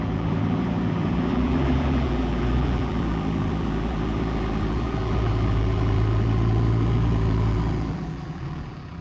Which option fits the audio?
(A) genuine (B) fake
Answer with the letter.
B